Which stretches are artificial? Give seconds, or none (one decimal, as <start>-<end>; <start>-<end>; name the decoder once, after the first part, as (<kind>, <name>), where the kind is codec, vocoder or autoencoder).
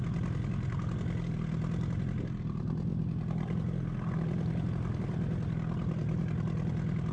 none